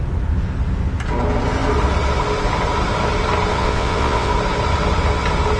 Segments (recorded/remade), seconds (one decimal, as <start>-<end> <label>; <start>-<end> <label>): 0.0-3.5 recorded; 3.5-4.3 remade; 4.3-5.6 recorded